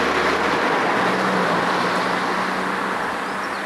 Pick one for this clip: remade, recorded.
recorded